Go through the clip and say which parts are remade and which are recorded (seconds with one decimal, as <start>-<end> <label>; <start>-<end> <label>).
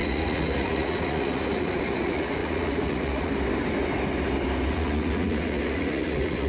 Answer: 0.0-3.3 remade; 3.3-4.7 recorded; 4.7-6.5 remade